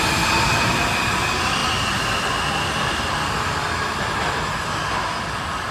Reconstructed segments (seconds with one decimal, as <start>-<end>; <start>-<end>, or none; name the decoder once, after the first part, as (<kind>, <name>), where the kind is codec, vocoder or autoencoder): none